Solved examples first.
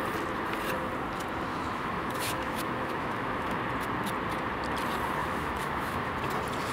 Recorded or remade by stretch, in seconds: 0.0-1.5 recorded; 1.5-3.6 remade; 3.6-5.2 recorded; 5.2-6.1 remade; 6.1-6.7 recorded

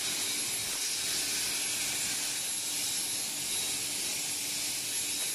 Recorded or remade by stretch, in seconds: 0.0-5.3 recorded

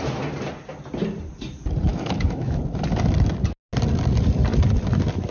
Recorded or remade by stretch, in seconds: 0.0-1.9 recorded; 1.9-2.6 remade; 2.6-5.3 recorded

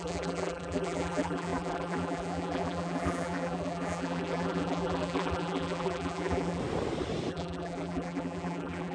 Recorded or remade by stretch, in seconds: 0.0-6.6 remade; 6.6-7.3 recorded; 7.3-8.9 remade

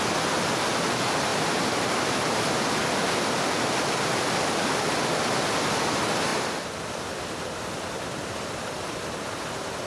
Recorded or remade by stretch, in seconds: 0.0-9.9 recorded